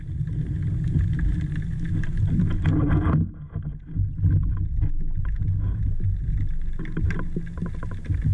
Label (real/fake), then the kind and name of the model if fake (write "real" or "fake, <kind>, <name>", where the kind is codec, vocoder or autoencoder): real